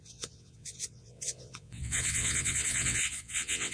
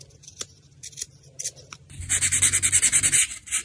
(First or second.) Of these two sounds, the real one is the second